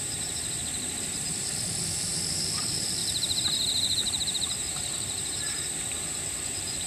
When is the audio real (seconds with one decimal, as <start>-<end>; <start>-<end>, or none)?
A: none